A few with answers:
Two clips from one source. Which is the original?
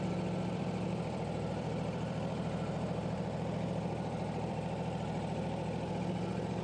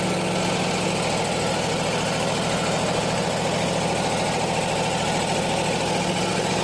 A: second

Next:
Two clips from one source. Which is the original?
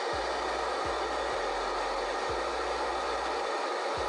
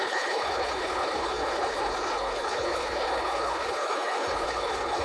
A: first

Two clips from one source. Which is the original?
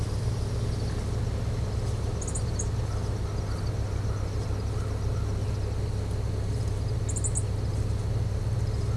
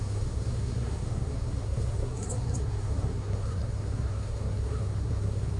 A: first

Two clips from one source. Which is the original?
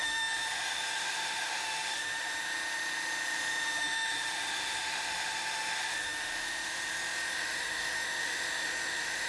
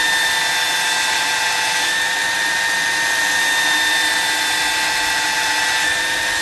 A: second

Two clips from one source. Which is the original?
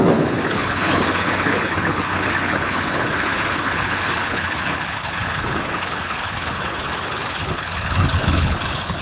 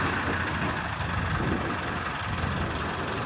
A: second